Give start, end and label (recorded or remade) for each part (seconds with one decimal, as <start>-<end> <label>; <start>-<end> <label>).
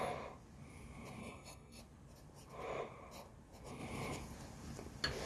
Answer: 0.0-1.2 recorded; 1.2-1.8 remade; 1.8-5.3 recorded